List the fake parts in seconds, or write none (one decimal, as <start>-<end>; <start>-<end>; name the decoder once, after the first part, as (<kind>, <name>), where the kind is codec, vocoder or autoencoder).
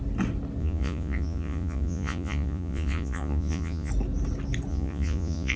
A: 0.6-3.9 (vocoder, Vocos); 4.7-5.6